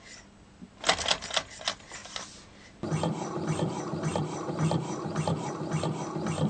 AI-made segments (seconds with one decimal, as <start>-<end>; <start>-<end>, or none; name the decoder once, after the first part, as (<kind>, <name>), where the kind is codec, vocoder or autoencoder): none